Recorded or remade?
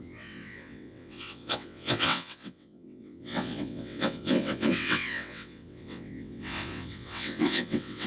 remade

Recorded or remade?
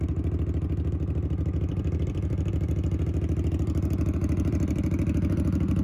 remade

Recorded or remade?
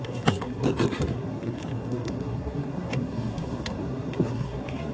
remade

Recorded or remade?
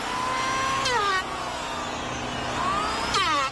recorded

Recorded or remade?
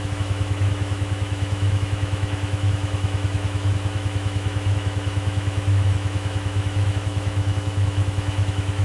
remade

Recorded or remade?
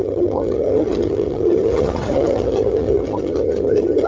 remade